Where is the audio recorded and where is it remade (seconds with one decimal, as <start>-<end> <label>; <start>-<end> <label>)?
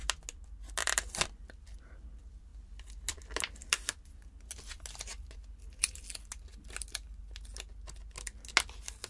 0.0-9.1 recorded